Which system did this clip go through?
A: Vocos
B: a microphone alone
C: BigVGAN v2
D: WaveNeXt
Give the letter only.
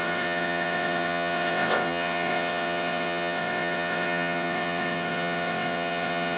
D